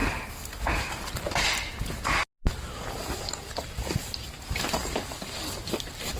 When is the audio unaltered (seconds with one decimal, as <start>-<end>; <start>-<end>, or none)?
0.0-6.2